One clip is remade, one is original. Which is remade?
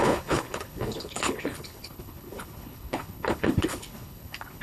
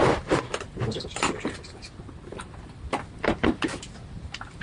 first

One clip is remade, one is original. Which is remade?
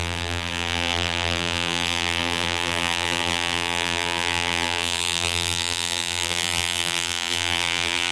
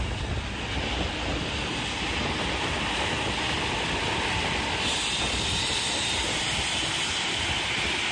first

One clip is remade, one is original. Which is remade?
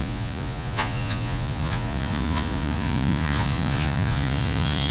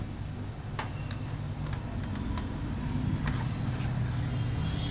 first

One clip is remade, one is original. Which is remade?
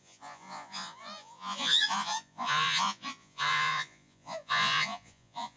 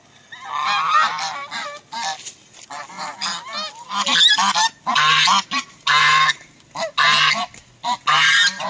first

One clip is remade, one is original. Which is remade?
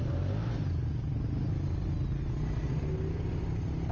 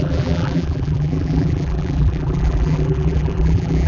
second